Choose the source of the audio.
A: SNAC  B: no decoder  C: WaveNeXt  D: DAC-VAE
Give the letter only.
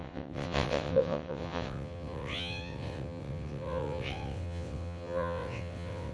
C